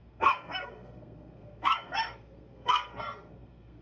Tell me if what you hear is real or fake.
fake